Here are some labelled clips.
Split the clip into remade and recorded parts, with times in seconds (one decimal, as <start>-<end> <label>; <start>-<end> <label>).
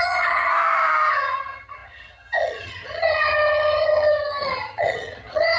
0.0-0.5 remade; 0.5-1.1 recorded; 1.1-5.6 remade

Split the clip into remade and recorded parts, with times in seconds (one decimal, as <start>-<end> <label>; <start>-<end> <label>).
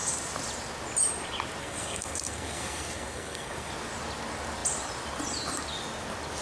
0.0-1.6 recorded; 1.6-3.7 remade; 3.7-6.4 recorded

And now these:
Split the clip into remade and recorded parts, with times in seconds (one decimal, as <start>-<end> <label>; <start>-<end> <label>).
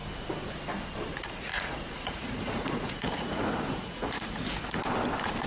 0.0-1.1 recorded; 1.1-4.4 remade; 4.4-5.5 recorded